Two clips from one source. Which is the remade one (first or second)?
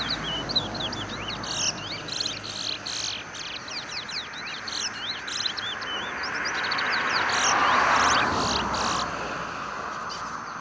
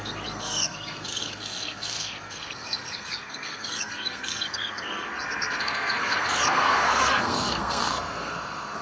second